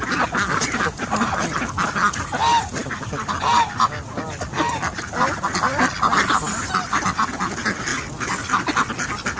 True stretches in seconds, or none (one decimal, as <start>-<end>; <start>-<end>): 0.0-9.4